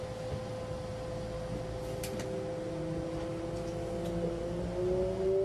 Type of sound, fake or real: real